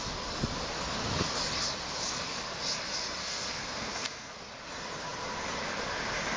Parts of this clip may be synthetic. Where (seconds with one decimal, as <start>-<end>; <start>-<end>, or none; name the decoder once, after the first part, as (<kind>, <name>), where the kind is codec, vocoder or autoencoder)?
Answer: 3.2-4.4 (codec, SNAC)